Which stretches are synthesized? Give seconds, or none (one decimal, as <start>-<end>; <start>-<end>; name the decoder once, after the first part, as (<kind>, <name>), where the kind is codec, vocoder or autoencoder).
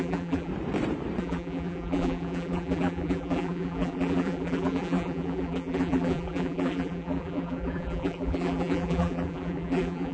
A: 0.0-0.5 (vocoder, BigVGAN v2); 1.2-10.1